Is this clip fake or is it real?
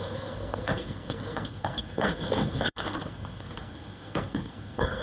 fake